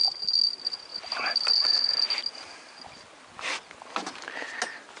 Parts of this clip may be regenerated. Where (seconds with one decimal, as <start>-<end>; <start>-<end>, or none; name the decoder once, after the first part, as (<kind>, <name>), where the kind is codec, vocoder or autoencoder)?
none